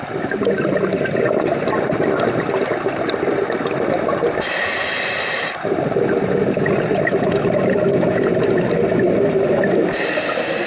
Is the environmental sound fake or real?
real